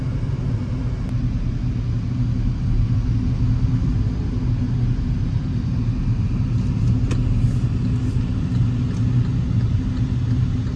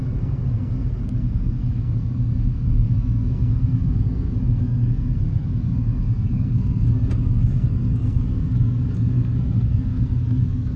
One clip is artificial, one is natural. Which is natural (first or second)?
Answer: first